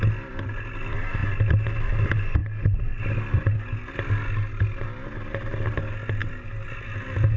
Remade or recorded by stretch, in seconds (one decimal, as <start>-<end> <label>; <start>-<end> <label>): 0.0-7.4 recorded